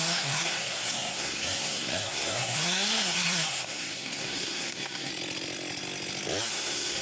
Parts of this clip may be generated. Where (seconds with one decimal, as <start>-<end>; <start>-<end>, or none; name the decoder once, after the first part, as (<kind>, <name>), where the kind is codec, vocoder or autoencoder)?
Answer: 0.0-5.1 (codec, SNAC); 6.5-7.0